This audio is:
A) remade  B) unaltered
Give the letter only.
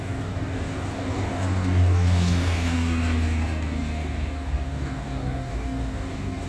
A